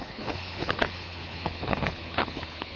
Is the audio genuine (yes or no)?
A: no